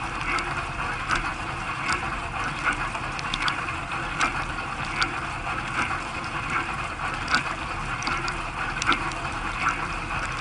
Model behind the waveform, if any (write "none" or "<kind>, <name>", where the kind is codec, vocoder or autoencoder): none